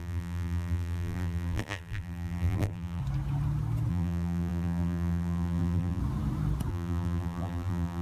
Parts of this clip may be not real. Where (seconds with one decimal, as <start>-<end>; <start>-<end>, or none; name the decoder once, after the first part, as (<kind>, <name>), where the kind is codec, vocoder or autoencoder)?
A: 0.0-3.0 (vocoder, BigVGAN v2); 3.9-6.0; 6.7-8.0